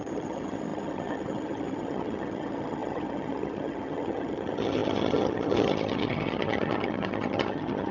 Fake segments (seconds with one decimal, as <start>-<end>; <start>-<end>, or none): 0.0-7.9